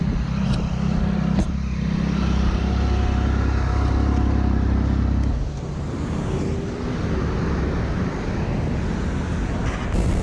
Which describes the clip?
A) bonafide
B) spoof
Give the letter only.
A